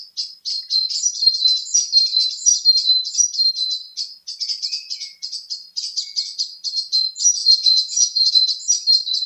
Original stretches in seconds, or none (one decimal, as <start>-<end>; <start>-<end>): 0.0-7.4; 8.3-9.3